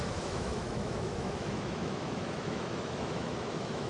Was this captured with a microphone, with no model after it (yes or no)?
no